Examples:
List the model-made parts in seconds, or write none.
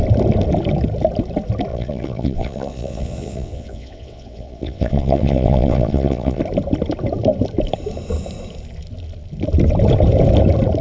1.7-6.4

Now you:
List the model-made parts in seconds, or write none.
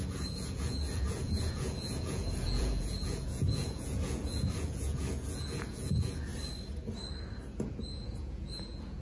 0.0-6.3; 7.7-9.0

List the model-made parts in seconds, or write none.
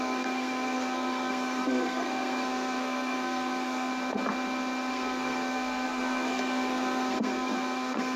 0.0-3.9; 4.9-8.2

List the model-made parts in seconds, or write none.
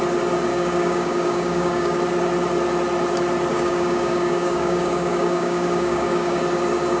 0.5-2.0; 3.5-6.4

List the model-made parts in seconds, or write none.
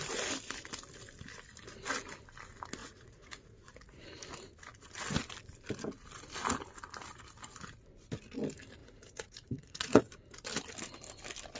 2.8-4.0; 8.8-10.0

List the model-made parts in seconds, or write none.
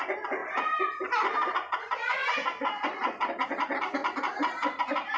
none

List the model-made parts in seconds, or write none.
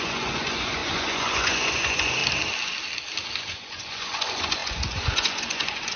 0.0-2.2; 3.4-6.0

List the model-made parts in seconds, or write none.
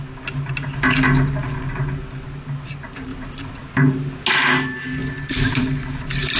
none